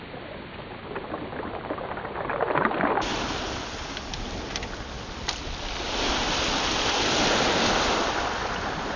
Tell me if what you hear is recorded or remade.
recorded